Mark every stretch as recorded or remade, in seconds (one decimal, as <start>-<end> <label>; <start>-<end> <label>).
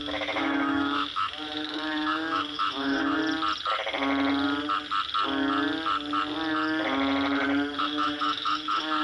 0.0-3.2 remade; 3.2-7.8 recorded; 7.8-9.0 remade